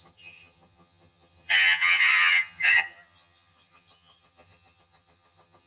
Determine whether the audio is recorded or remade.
remade